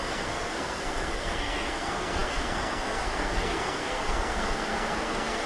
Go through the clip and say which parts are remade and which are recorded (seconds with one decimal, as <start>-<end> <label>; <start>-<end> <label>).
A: 0.0-5.5 remade